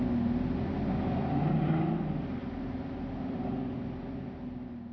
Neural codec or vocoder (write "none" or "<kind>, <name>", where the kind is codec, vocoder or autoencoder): none